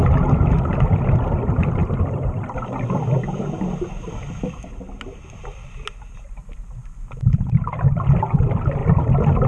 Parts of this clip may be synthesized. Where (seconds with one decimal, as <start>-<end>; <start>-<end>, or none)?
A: 1.8-6.0